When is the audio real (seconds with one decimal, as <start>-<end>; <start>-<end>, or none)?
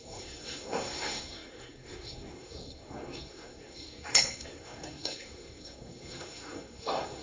none